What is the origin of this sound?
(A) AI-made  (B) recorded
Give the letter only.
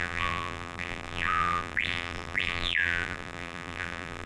A